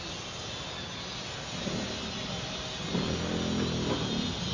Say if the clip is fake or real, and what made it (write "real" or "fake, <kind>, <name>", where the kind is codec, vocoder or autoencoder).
real